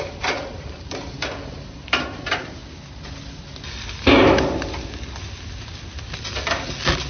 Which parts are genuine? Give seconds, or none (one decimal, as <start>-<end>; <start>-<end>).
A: 2.6-7.1